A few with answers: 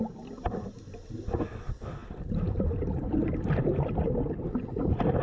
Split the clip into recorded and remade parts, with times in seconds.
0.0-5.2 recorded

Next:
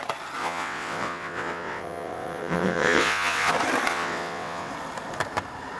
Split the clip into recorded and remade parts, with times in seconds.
0.0-0.4 recorded; 0.4-3.5 remade; 3.5-3.9 recorded; 3.9-4.7 remade; 4.7-5.8 recorded

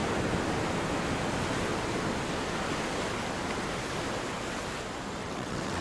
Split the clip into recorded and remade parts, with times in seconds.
0.0-5.2 recorded; 5.2-5.8 remade

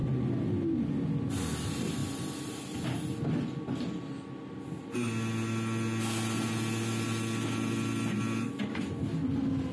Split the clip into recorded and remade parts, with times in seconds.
0.0-9.7 recorded

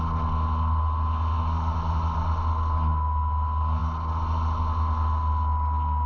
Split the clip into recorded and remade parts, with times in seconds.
0.0-6.1 recorded

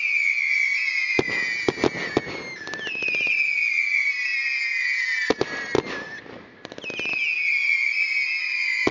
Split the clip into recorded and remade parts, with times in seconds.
0.0-8.9 recorded